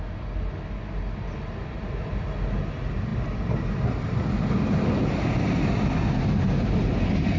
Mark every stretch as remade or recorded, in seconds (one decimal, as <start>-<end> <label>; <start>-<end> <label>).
0.0-7.4 recorded